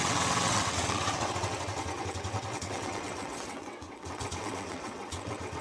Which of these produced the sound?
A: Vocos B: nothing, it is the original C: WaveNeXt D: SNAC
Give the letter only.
C